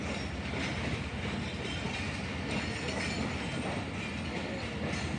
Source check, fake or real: real